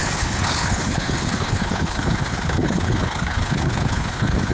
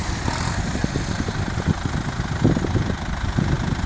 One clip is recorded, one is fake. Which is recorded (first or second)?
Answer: second